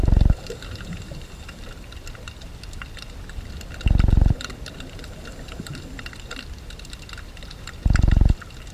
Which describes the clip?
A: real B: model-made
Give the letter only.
B